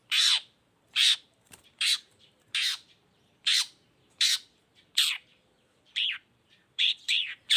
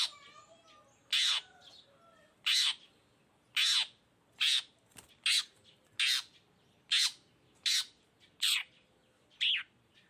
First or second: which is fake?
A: first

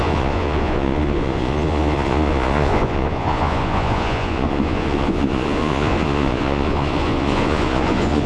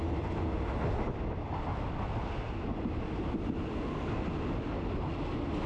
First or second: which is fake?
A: first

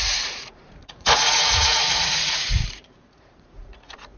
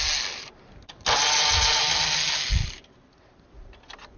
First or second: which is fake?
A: first